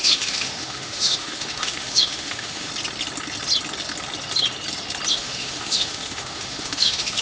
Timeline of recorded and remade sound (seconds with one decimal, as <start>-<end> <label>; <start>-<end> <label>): 0.0-2.7 remade; 2.7-5.1 recorded; 5.1-7.2 remade